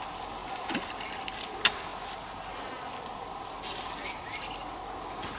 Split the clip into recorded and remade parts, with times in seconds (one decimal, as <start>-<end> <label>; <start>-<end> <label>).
0.0-5.4 recorded